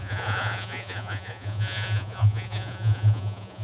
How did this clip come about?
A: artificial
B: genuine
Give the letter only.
A